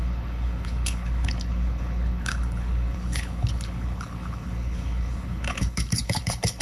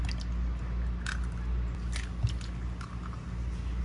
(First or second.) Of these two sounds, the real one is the second